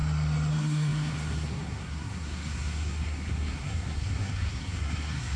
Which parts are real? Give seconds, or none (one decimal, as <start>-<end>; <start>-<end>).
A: 0.0-0.5